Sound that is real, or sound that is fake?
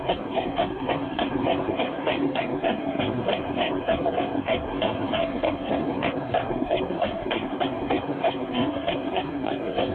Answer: fake